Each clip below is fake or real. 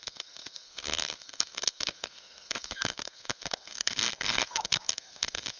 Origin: fake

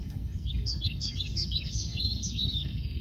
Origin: fake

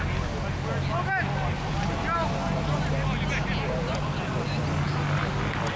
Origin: real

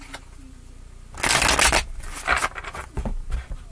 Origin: real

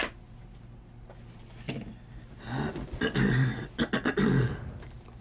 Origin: real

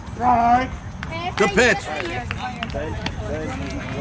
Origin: real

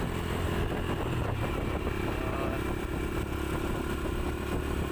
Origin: real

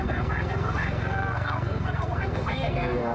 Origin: fake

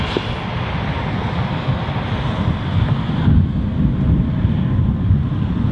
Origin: real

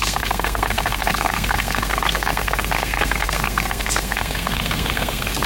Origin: fake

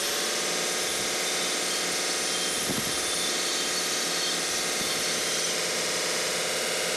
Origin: real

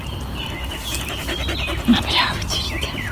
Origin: real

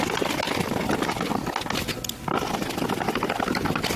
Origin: real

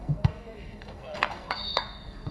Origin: fake